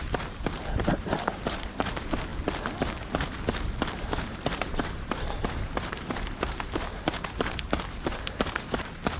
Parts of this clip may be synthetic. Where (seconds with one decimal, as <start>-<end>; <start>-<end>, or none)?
0.0-2.3; 3.9-9.2